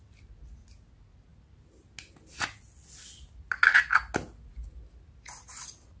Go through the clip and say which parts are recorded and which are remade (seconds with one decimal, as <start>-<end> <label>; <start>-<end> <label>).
0.0-6.0 recorded